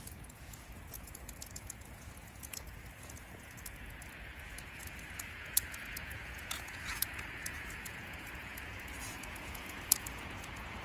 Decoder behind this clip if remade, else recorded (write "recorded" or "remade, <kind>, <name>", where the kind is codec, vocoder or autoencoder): remade, vocoder, Vocos